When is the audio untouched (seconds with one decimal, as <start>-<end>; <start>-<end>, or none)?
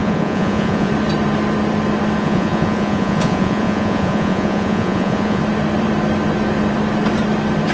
0.9-2.2; 5.4-7.7